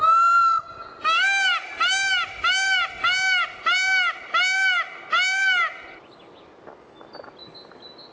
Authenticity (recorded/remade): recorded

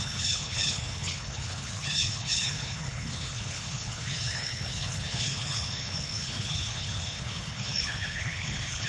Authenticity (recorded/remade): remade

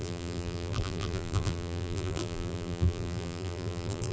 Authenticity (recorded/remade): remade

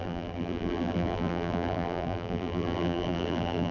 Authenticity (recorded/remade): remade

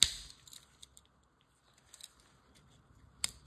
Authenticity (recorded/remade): recorded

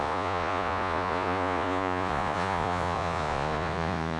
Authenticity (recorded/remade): remade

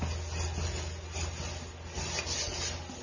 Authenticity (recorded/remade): recorded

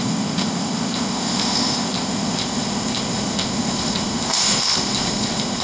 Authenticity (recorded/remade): remade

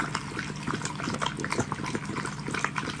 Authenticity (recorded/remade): recorded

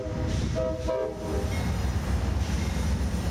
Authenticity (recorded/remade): recorded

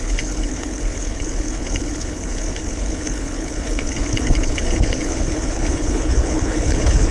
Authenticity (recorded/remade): remade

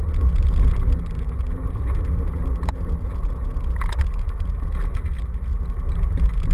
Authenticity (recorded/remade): recorded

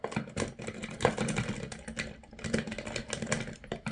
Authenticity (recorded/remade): recorded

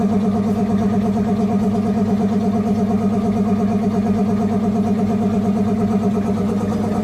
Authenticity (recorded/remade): recorded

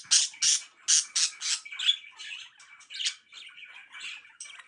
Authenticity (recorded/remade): recorded